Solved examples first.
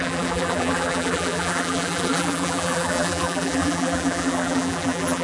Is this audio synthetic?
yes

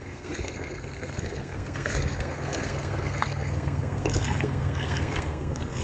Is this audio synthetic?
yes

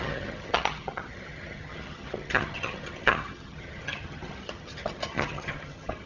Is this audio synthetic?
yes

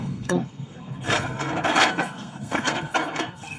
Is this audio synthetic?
yes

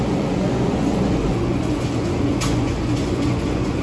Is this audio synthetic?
yes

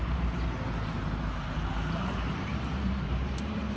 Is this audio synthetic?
yes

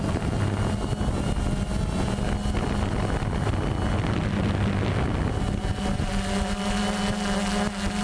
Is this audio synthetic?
no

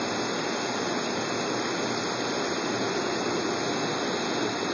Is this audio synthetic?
no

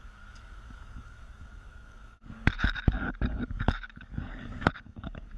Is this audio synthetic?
yes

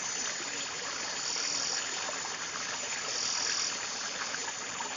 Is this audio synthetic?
no